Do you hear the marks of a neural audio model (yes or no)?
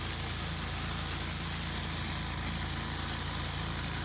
no